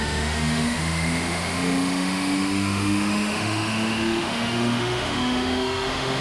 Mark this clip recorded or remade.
remade